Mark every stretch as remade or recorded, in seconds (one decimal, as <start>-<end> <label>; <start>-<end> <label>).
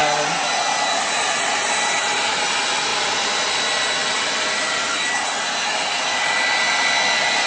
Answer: 0.0-7.5 recorded